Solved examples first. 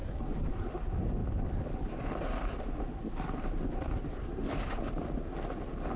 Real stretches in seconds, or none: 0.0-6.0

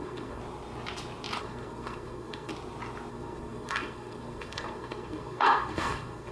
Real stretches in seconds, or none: 0.4-1.4; 2.5-3.1

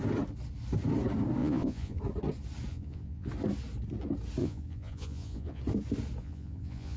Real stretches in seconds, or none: 0.0-1.4; 2.0-2.7; 3.3-4.4; 5.6-6.2